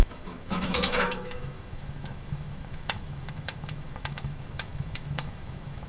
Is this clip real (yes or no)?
no